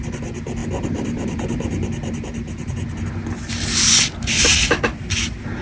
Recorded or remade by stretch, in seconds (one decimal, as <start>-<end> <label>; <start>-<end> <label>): 0.0-5.6 recorded